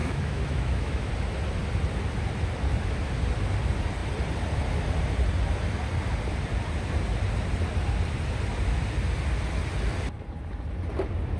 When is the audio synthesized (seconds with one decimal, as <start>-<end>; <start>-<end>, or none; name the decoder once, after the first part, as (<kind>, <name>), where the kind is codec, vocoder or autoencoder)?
0.0-1.1 (autoencoder, DAC-VAE)